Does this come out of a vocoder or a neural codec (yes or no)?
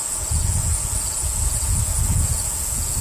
yes